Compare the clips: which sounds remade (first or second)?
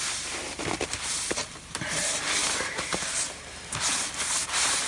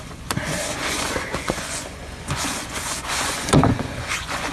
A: second